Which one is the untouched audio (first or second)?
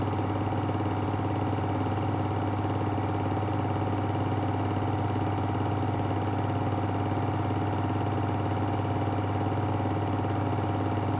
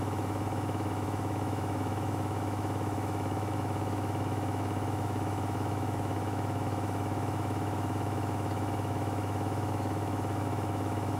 first